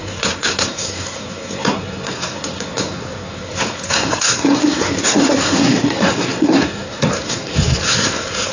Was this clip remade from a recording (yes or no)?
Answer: yes